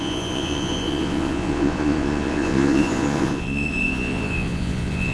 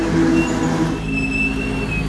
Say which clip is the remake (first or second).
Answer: first